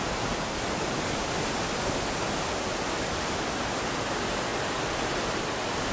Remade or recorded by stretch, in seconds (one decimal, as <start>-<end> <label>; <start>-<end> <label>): 0.0-5.9 recorded